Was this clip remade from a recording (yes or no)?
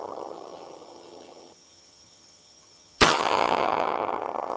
yes